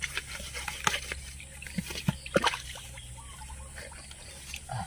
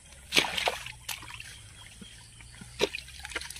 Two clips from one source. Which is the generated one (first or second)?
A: second